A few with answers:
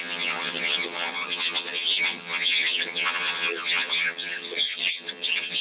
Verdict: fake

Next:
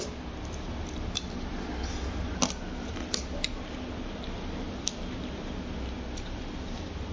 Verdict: real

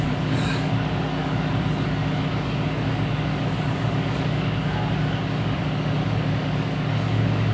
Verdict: fake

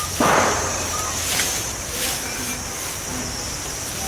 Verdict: fake